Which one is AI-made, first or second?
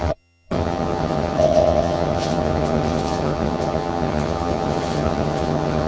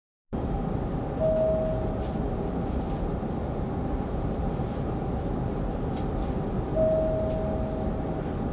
first